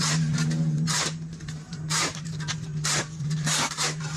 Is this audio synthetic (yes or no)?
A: yes